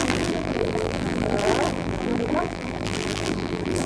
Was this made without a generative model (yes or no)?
no